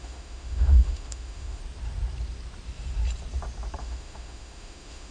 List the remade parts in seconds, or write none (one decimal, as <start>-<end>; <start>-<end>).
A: 0.0-1.6; 3.8-5.1

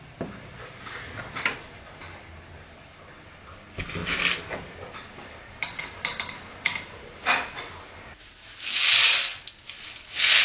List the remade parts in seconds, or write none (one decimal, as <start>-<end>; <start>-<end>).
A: none

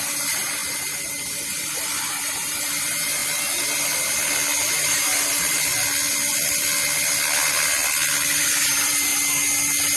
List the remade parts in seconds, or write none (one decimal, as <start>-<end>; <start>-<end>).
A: 0.0-3.2; 4.7-5.7; 8.3-9.1

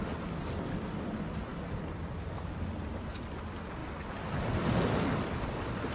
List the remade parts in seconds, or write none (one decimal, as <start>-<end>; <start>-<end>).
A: none

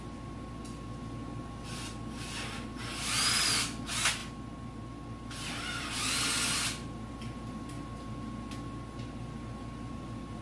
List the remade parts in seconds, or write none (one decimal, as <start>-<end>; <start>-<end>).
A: none

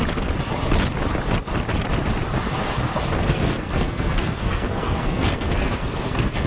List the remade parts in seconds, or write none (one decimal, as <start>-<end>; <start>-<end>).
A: 3.2-6.5

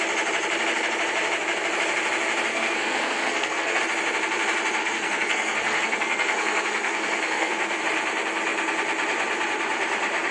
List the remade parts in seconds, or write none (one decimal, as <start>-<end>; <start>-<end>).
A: 2.5-3.8; 4.8-7.8

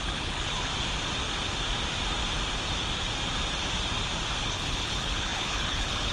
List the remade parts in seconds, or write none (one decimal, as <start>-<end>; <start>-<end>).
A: 0.0-0.7; 4.4-6.1